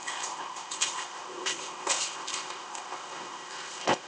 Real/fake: fake